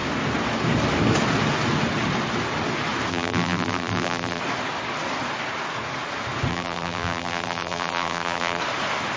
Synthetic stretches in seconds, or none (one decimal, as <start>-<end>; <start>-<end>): 3.1-4.4; 6.5-8.6